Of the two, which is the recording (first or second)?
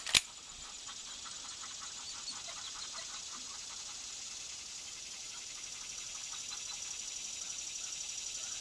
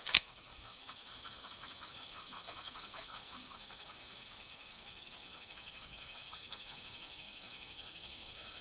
first